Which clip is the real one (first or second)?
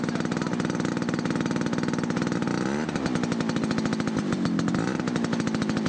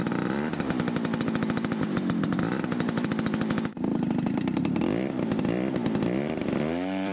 first